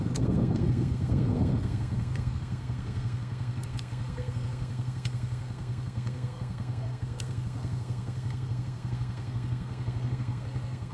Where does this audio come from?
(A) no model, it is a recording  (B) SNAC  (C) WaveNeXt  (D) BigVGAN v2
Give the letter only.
B